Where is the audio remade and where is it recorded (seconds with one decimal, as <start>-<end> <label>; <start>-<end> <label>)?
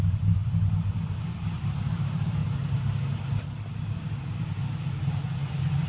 0.0-5.9 recorded